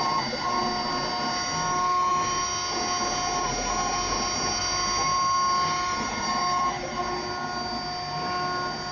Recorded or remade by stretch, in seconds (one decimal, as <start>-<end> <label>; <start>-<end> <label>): 0.0-8.9 recorded

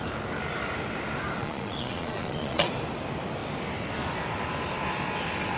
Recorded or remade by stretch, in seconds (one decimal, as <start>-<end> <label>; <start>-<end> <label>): 0.0-1.4 recorded; 1.4-2.7 remade; 2.7-5.6 recorded

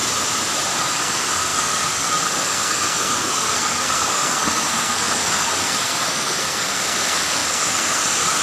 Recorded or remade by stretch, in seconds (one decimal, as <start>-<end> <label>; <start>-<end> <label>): 0.0-0.8 recorded; 0.8-8.4 remade

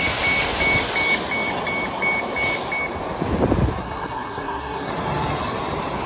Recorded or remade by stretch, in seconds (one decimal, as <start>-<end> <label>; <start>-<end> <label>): 0.0-3.8 recorded; 3.8-4.9 remade; 4.9-6.1 recorded